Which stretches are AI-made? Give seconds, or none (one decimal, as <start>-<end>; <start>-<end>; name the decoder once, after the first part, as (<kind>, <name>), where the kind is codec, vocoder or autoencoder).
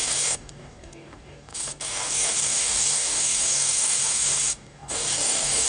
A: 0.0-5.7 (codec, DAC)